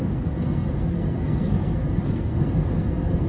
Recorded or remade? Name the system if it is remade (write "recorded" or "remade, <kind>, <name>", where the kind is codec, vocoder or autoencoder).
remade, codec, SNAC